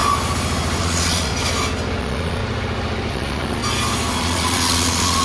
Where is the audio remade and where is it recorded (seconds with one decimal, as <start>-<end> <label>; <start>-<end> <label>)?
0.0-0.8 recorded; 0.8-1.3 remade; 1.3-2.0 recorded; 2.0-2.4 remade; 2.4-3.1 recorded; 3.1-3.6 remade; 3.6-4.2 recorded; 4.2-5.2 remade